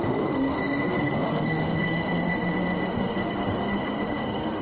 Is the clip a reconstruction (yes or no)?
yes